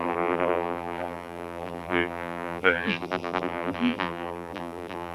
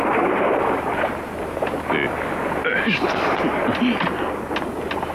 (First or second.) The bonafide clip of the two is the second